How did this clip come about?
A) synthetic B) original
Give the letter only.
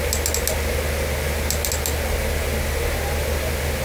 B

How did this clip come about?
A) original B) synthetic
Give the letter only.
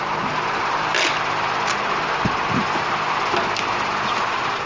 A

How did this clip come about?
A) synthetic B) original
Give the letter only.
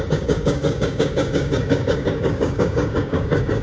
A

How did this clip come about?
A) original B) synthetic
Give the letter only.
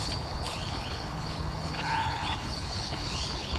B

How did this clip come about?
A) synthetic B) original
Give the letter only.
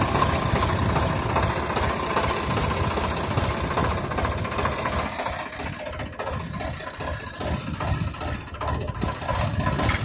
B